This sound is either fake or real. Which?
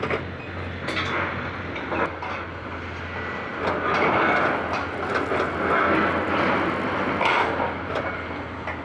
real